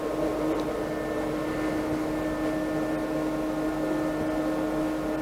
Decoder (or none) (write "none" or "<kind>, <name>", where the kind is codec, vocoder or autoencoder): none